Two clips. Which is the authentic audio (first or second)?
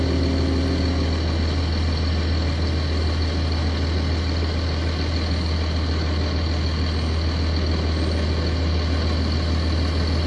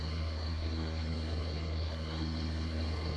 first